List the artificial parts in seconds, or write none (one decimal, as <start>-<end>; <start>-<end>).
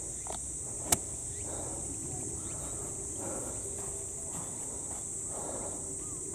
none